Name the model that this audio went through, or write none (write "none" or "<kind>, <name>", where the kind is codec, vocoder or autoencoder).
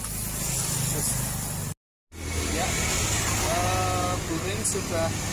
none